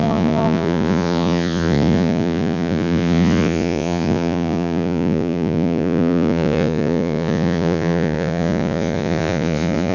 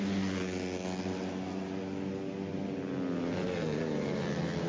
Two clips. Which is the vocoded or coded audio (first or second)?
first